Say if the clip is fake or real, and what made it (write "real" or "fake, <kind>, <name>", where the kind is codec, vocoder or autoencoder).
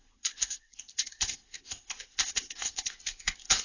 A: fake, codec, ZipCodec